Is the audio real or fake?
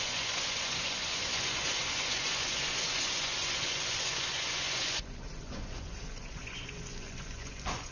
fake